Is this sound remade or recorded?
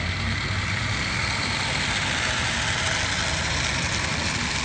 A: recorded